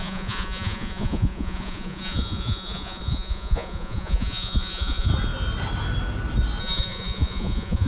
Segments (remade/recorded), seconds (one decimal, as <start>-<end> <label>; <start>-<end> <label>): 0.0-5.1 remade; 5.1-6.6 recorded; 6.6-7.9 remade